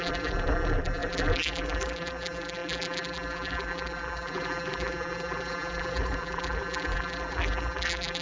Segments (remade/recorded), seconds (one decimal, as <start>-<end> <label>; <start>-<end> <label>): 0.0-8.2 remade